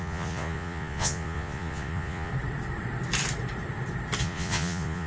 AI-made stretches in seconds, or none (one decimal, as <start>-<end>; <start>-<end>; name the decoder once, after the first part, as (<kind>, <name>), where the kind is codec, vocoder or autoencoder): 0.0-2.3 (vocoder, Vocos); 4.2-5.1